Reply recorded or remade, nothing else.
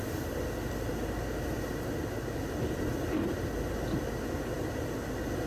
recorded